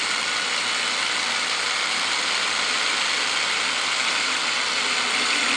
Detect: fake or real real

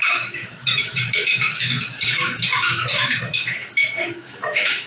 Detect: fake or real fake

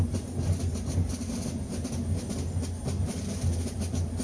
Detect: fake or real real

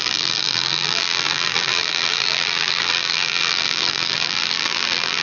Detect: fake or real fake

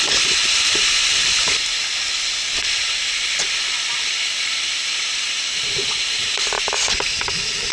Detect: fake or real real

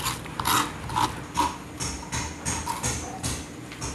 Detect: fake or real real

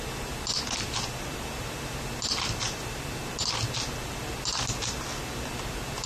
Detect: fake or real real